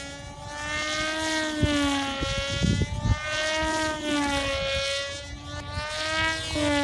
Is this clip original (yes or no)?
yes